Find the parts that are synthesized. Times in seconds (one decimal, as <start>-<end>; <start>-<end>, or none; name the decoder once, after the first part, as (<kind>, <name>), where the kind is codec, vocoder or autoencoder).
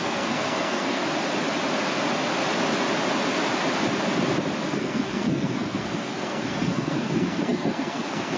0.0-1.0 (codec, SNAC); 4.6-8.4